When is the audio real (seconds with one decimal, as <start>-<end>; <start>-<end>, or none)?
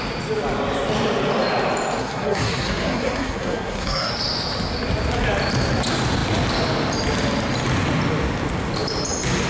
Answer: 0.0-2.0; 4.1-9.5